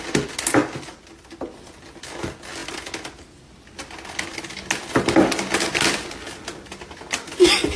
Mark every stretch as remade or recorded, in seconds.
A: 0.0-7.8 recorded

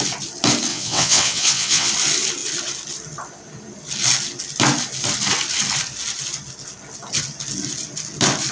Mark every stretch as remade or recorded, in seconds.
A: 0.0-0.7 recorded; 0.7-1.9 remade; 1.9-8.5 recorded

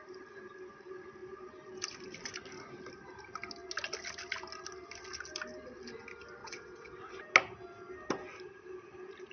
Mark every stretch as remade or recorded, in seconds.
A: 0.0-6.4 recorded; 6.4-7.2 remade; 7.2-9.3 recorded

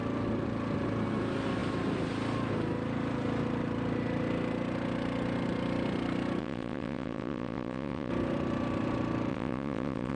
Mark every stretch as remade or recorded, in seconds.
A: 0.0-6.4 recorded; 6.4-8.1 remade; 8.1-9.3 recorded; 9.3-10.2 remade

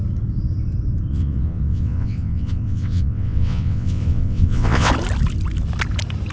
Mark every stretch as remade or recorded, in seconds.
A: 0.0-1.1 recorded; 1.1-4.9 remade; 4.9-6.3 recorded

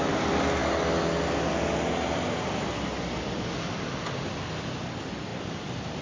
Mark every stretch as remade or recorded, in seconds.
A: 0.0-6.0 recorded